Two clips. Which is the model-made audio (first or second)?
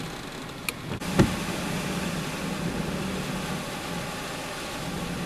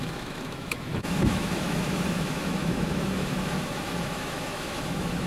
second